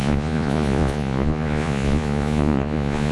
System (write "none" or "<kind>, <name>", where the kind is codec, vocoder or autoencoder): vocoder, Vocos